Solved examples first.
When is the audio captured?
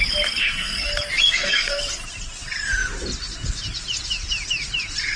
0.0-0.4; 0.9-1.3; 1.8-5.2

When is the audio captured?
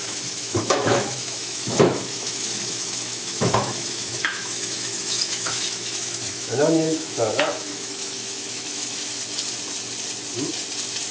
9.2-11.1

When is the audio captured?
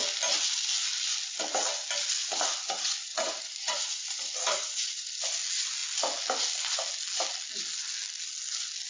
0.0-2.2; 5.1-8.9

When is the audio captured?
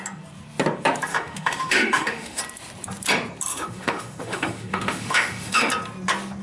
0.0-1.1; 2.4-3.5; 5.7-6.4